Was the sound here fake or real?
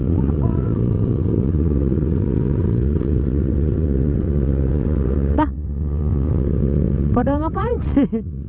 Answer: fake